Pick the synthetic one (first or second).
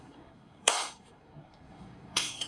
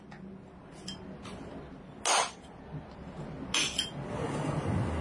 first